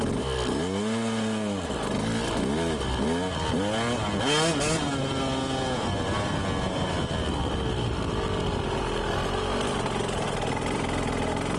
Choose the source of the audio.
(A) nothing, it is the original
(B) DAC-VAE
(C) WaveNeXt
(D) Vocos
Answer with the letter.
A